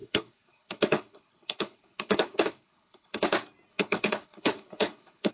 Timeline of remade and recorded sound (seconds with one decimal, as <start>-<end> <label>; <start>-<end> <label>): 0.0-3.2 remade; 3.2-3.7 recorded; 3.7-5.3 remade